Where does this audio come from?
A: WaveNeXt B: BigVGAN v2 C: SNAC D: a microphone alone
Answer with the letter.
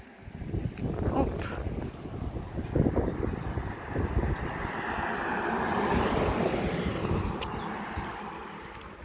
D